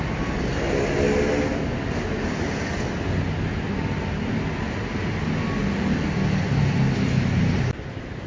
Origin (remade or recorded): recorded